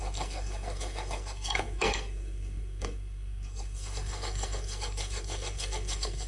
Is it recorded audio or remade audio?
remade